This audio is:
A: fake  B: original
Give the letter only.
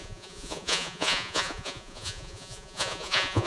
A